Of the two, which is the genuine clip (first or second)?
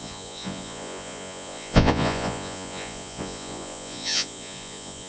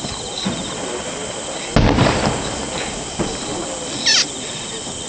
second